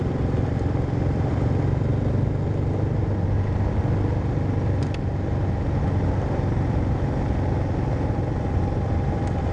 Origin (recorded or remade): recorded